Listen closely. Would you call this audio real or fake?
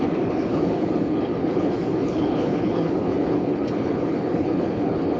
fake